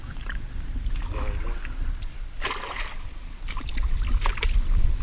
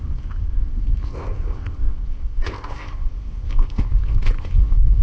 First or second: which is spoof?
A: second